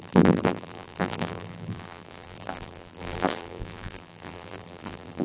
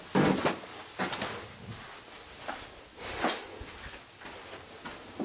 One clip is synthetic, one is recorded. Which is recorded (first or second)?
second